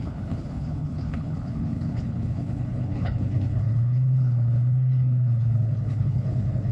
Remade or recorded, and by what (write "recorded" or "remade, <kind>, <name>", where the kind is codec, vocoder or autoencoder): remade, codec, HILCodec